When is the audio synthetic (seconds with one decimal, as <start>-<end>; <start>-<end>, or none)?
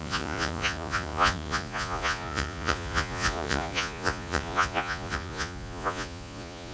0.0-6.7